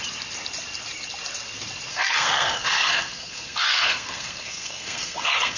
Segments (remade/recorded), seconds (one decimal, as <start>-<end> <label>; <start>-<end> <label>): 0.0-1.9 recorded; 1.9-5.6 remade